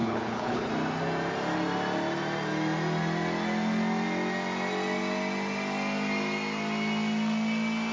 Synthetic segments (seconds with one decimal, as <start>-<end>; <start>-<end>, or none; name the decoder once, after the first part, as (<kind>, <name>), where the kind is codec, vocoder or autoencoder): 0.0-0.7 (codec, HILCodec)